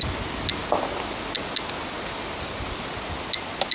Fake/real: real